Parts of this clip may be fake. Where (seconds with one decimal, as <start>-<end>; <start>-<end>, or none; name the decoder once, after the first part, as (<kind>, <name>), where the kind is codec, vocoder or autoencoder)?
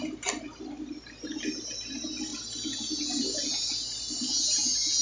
none